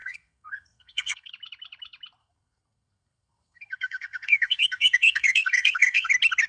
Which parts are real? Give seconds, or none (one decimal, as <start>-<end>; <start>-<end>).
1.3-2.2; 6.1-6.5